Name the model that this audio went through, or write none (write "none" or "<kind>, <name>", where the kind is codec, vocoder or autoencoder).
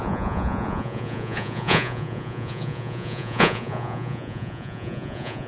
vocoder, Vocos